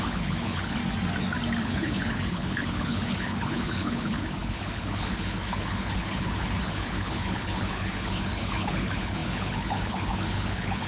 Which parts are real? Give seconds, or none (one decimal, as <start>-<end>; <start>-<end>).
0.8-1.6

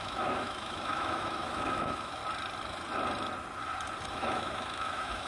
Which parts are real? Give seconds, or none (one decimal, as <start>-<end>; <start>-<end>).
2.2-4.1